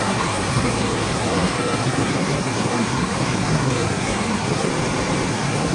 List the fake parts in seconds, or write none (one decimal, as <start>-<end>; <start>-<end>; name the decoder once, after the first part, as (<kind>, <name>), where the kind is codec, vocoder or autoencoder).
0.0-4.7 (codec, SNAC); 5.3-5.7